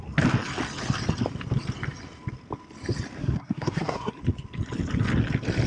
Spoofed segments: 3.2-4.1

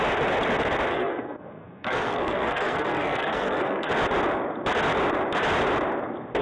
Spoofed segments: 0.9-3.9

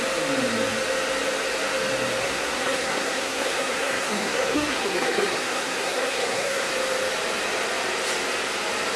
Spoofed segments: 2.2-6.7

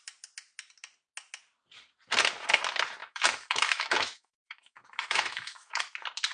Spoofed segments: 3.0-5.8

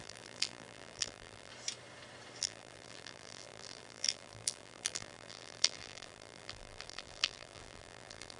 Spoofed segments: 0.0-1.5; 2.4-8.4

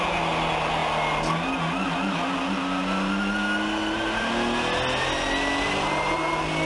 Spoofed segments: none

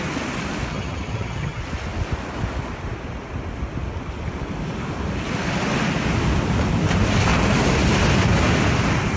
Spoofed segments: 0.7-1.6

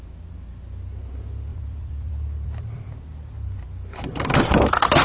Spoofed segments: 1.5-3.0